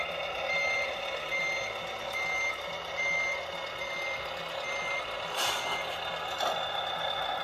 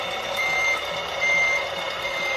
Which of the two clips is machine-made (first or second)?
second